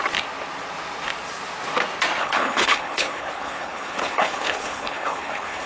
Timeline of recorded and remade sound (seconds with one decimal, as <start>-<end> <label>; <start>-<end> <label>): 0.0-2.2 recorded; 2.2-5.7 remade

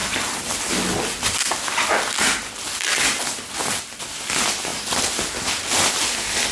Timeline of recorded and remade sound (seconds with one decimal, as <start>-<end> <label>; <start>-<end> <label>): 0.0-6.5 recorded

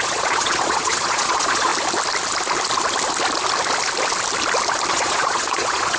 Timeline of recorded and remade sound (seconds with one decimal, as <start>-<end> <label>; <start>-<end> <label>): 0.0-1.7 remade; 1.7-4.9 recorded; 4.9-6.0 remade

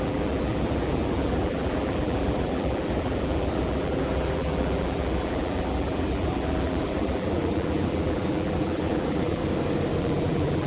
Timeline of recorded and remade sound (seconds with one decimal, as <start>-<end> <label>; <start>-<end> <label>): 0.0-9.4 remade; 9.4-10.0 recorded; 10.0-10.7 remade